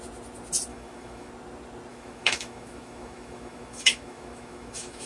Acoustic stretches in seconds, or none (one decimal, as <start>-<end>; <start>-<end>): 0.0-0.7; 1.3-1.9